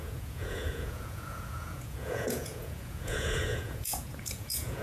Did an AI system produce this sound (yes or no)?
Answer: yes